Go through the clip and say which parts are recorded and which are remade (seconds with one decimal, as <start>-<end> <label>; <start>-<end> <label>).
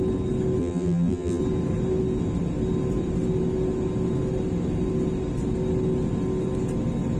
0.0-0.6 recorded; 0.6-1.4 remade; 1.4-7.2 recorded